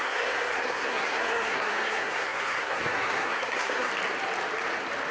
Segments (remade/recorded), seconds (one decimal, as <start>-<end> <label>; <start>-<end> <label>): 0.0-3.9 remade; 3.9-5.1 recorded